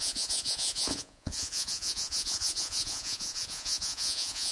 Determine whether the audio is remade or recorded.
remade